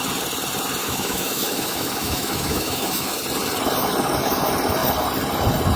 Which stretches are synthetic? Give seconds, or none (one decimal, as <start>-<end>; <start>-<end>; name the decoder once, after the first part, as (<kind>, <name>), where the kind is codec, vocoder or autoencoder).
0.8-3.1 (autoencoder, DAC-VAE)